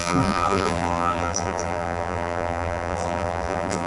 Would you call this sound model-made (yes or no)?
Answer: yes